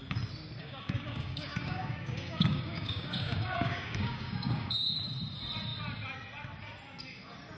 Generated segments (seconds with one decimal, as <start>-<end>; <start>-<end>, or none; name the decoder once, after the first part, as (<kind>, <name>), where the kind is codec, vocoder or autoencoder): 0.6-5.0 (codec, DAC)